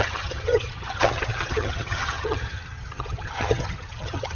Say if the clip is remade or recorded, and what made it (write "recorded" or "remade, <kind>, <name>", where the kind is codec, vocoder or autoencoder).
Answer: remade, vocoder, HiFi-GAN